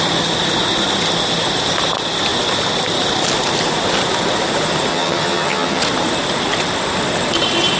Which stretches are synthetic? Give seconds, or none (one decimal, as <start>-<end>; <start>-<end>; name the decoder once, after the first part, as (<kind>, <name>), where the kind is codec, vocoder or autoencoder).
4.9-5.8 (vocoder, HiFi-GAN)